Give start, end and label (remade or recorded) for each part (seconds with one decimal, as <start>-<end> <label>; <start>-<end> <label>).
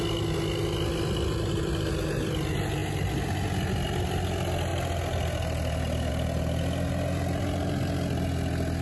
0.0-8.8 recorded